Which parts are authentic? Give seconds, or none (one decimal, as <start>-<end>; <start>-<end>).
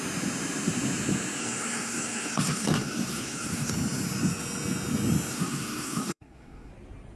0.0-1.4; 3.7-5.3; 6.7-7.2